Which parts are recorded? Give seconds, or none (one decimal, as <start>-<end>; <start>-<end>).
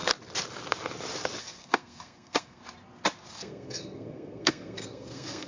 0.0-1.4; 2.6-3.3